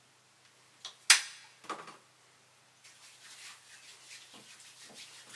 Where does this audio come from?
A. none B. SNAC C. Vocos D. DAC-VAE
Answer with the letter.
A